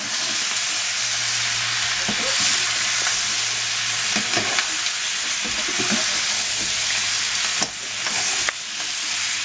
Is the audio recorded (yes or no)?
yes